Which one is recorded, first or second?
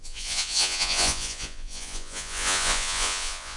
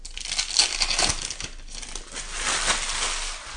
second